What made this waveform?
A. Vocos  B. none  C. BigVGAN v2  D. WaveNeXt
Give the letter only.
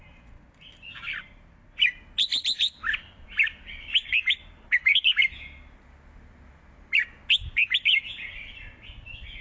B